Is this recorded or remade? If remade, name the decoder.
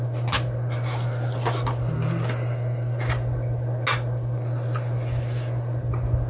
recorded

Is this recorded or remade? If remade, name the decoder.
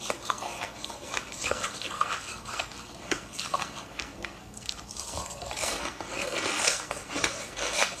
remade, codec, SNAC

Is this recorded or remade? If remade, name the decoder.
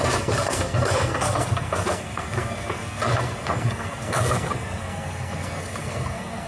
remade, codec, SNAC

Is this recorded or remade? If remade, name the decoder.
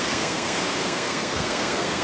remade, codec, SNAC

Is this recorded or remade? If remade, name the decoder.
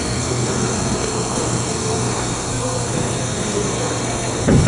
remade, codec, SNAC